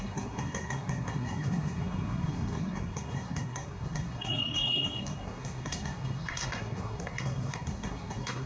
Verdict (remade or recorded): remade